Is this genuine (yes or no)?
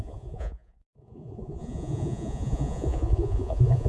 no